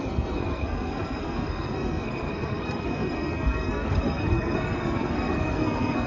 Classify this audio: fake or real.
fake